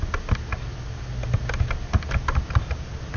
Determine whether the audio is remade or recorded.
recorded